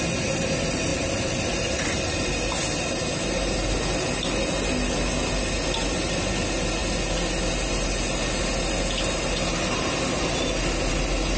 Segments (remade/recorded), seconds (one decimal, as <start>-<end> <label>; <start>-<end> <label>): 0.0-11.4 recorded